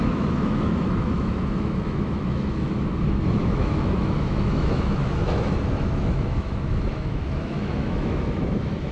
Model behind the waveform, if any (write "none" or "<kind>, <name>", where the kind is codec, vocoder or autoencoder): autoencoder, DAC-VAE